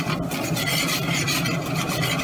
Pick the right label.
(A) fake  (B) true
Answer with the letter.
A